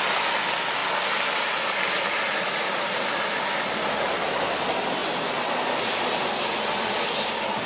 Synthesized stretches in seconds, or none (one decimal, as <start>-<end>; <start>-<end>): none

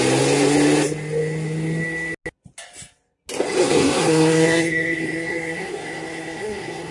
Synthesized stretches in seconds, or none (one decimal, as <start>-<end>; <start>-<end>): 3.6-6.9

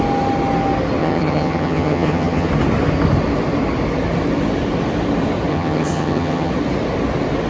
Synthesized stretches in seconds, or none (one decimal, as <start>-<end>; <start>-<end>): 1.0-2.5; 5.5-6.5

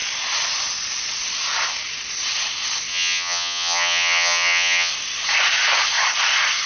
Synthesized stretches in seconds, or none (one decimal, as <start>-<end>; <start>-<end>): 2.9-4.9

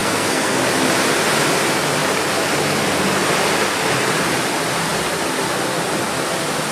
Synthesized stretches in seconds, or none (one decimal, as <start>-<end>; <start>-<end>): 0.0-0.6